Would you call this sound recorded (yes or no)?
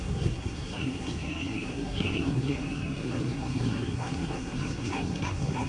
no